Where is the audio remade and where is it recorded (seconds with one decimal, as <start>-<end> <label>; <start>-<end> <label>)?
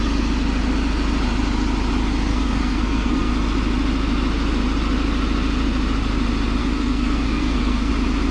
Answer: 0.0-2.3 recorded; 2.3-3.3 remade; 3.3-6.6 recorded; 6.6-7.9 remade; 7.9-8.3 recorded